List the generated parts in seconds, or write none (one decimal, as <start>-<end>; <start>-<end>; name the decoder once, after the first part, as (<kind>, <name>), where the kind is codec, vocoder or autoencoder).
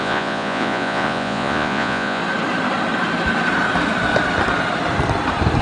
0.0-2.2 (vocoder, Vocos)